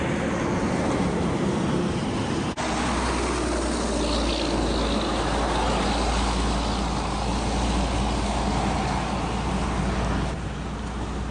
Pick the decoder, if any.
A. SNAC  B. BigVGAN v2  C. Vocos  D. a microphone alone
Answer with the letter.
D